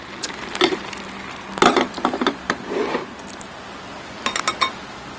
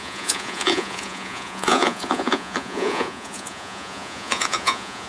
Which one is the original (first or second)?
first